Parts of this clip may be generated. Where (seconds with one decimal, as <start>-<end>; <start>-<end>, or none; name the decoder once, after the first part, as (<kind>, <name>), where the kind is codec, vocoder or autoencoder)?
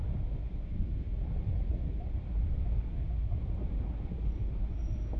1.1-3.1 (vocoder, BigVGAN v2)